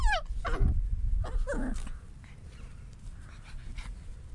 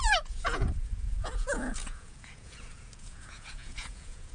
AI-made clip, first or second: second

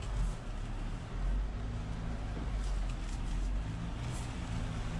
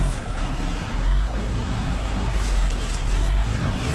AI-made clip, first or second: second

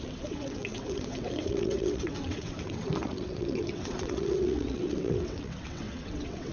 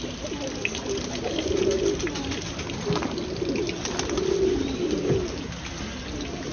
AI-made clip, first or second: first